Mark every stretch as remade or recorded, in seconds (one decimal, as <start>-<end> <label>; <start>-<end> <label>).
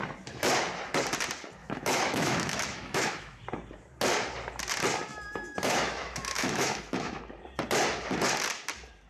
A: 0.0-1.6 recorded; 1.6-3.4 remade; 3.4-5.1 recorded; 5.1-7.2 remade; 7.2-9.1 recorded